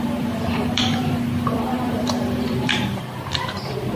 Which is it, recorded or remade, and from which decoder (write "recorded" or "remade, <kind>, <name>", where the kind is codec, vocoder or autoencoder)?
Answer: remade, vocoder, BigVGAN v2